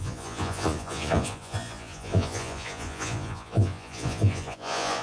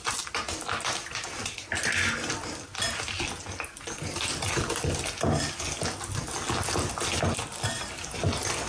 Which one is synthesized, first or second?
first